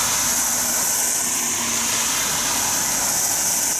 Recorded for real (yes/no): yes